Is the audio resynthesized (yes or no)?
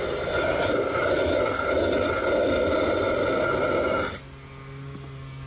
no